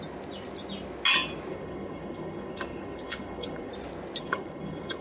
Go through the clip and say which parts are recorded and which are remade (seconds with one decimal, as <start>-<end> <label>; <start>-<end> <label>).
0.0-1.5 recorded; 1.5-3.7 remade; 3.7-4.2 recorded; 4.2-5.0 remade